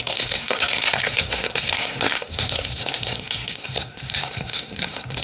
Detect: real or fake fake